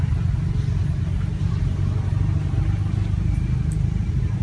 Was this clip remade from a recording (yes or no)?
no